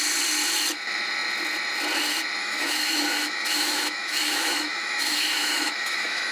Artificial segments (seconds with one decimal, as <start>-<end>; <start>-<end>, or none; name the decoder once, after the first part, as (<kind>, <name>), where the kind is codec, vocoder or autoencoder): 2.4-6.3 (autoencoder, DAC-VAE)